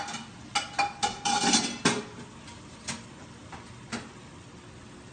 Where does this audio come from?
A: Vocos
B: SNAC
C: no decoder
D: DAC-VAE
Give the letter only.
C